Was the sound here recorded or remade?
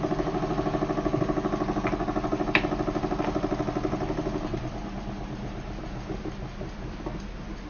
recorded